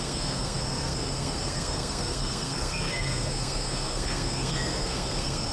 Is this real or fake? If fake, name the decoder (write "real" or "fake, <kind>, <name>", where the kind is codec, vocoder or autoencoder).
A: fake, codec, SNAC